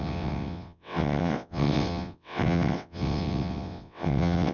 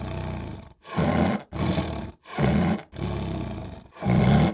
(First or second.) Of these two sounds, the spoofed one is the first